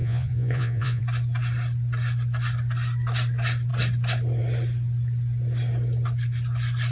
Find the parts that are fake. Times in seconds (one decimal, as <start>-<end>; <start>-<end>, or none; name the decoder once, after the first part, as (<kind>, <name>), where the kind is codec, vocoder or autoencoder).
0.0-1.0 (vocoder, Vocos)